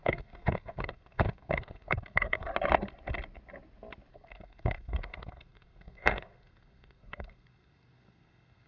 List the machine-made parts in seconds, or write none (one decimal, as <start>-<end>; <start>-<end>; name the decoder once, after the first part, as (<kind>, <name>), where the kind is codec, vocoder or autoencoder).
0.0-2.5 (codec, SNAC); 4.1-8.7